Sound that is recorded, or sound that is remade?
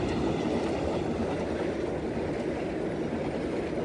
recorded